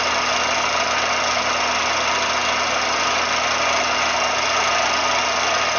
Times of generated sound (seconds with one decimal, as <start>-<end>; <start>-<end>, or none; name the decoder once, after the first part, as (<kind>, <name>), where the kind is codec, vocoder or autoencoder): none